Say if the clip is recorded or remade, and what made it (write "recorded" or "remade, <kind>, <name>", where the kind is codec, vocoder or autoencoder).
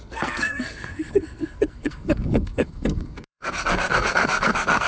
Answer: remade, codec, SNAC